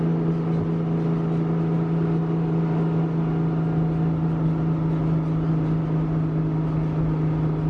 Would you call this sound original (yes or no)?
yes